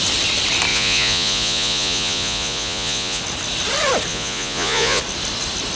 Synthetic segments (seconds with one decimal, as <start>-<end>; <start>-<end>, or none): 0.7-3.2; 4.1-5.0